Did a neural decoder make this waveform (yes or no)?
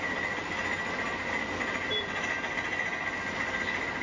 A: no